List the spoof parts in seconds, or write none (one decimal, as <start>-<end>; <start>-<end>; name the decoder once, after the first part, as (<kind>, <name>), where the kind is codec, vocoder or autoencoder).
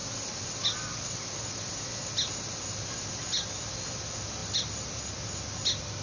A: none